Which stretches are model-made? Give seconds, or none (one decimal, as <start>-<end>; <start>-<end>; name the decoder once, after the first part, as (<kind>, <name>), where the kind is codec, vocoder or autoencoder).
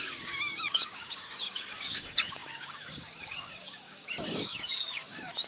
0.0-5.5 (codec, DAC)